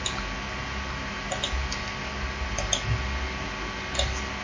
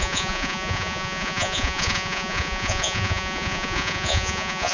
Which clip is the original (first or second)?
first